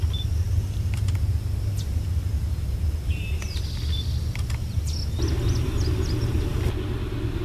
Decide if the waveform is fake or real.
real